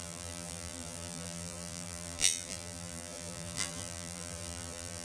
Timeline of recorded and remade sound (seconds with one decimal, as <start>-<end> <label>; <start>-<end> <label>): 0.0-5.0 remade